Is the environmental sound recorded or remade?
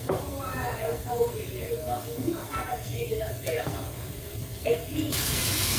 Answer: remade